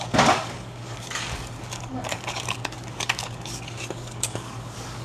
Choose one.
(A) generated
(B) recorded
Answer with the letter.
A